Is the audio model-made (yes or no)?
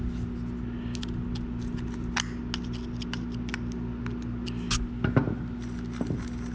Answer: no